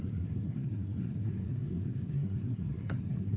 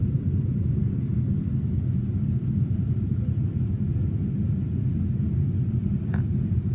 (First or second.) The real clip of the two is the second